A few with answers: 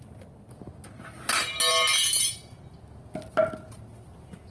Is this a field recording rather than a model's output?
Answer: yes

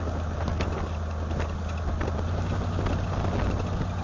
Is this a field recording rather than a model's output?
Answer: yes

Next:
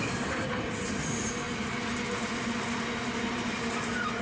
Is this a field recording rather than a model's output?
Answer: yes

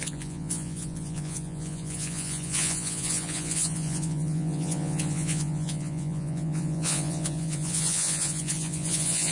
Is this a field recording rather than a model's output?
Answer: no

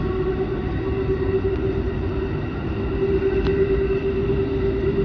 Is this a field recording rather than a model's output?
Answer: yes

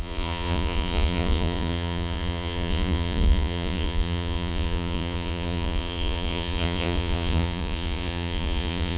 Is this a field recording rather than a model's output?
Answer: no